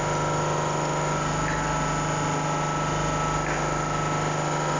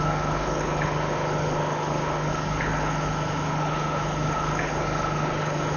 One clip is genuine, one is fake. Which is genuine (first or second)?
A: first